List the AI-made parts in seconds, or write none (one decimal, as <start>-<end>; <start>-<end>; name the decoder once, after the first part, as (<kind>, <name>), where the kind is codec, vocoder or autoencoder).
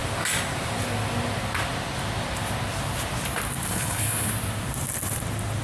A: 3.7-4.3 (codec, HILCodec)